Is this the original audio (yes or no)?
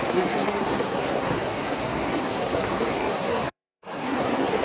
no